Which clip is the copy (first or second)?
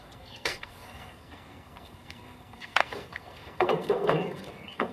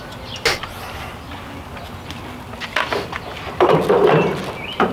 first